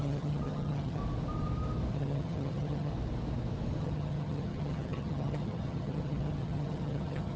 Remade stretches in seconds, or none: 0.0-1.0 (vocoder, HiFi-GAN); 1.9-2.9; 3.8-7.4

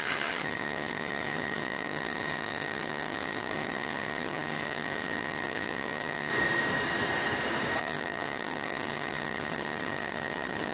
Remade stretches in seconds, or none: 0.0-6.3 (vocoder, HiFi-GAN); 7.8-10.7

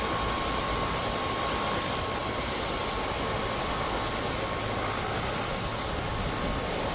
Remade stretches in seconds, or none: none

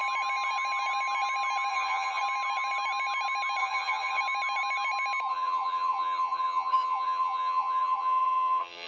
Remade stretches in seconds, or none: 1.7-2.2 (vocoder, HiFi-GAN); 3.6-4.2; 5.3-8.9

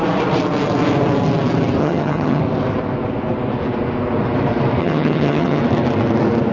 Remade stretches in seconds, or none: 1.8-2.4 (vocoder, HiFi-GAN); 4.8-5.6